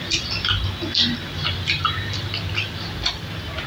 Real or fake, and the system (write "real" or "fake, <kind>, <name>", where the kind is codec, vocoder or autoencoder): real